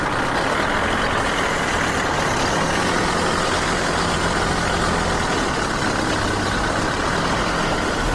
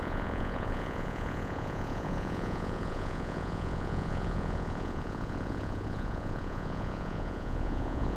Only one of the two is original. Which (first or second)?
first